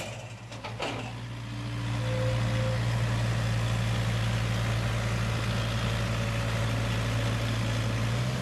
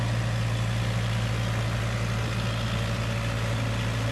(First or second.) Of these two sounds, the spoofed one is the second